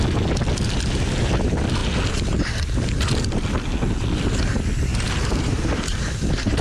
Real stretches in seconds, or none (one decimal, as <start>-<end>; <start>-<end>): 0.0-4.9; 6.0-6.6